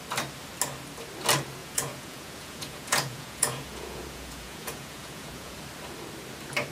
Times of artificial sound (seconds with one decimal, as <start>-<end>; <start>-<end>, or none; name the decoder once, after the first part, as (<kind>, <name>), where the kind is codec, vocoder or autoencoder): 1.6-5.6 (vocoder, Vocos)